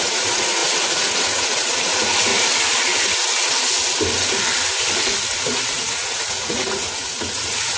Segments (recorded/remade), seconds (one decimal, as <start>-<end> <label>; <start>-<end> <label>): 0.0-2.3 remade; 2.3-5.4 recorded; 5.4-7.8 remade